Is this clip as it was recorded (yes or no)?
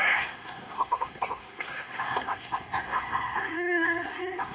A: no